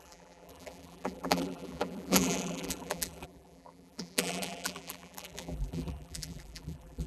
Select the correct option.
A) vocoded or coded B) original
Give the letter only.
A